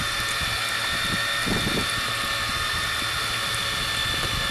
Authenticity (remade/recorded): recorded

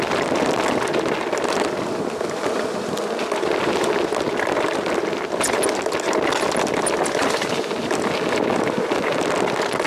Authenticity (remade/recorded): recorded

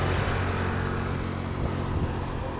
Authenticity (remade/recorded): recorded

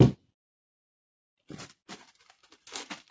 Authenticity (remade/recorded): recorded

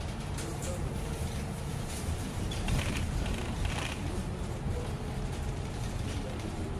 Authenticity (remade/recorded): remade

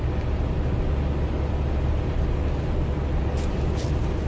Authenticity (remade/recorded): recorded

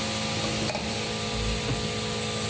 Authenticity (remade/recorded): recorded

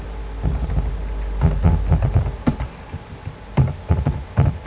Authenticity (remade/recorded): recorded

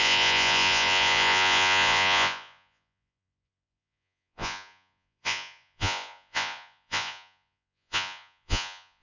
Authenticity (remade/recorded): remade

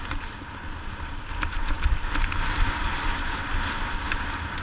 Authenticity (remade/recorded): recorded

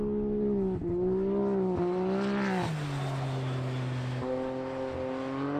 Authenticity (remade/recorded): recorded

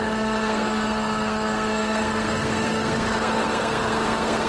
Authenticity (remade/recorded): remade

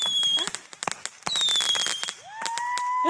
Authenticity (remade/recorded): recorded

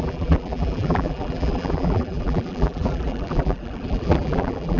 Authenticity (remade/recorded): remade